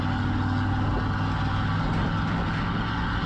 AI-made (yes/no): no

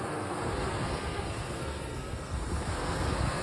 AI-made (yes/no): yes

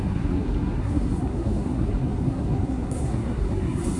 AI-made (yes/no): yes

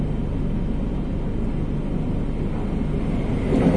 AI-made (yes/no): no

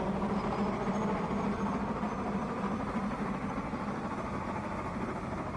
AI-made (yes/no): no